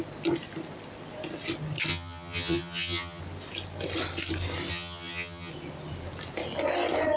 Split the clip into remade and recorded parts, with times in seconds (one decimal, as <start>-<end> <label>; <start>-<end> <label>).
0.0-1.9 recorded; 1.9-3.2 remade; 3.2-4.7 recorded; 4.7-5.5 remade; 5.5-7.2 recorded